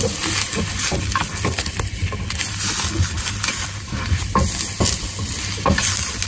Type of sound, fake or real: real